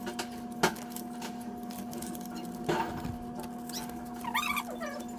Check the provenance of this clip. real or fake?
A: real